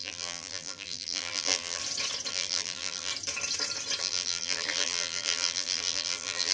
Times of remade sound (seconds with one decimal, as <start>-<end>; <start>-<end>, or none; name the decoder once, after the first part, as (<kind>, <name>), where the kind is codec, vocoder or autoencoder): 0.0-1.8 (vocoder, BigVGAN v2); 2.3-3.1; 4.0-6.5